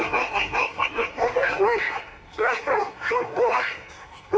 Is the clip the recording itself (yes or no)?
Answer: no